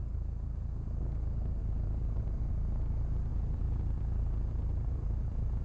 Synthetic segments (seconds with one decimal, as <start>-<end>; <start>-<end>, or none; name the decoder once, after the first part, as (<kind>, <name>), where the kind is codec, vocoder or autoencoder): 1.6-2.5 (vocoder, BigVGAN v2); 3.3-5.6